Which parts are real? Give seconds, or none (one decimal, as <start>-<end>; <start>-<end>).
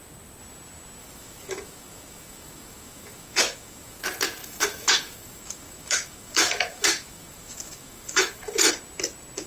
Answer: 0.0-1.0; 4.0-4.4; 8.7-9.5